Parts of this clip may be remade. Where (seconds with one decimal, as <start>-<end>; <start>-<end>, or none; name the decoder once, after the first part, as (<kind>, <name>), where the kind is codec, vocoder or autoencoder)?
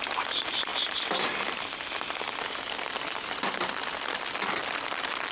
none